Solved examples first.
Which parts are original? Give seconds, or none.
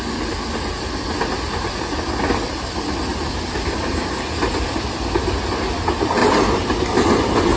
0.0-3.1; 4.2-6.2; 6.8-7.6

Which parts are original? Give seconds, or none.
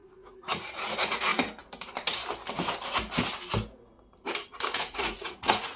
1.3-4.8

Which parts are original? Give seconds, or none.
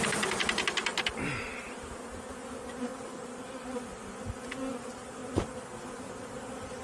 0.0-6.8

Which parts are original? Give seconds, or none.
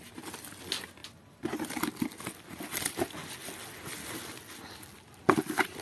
0.0-5.8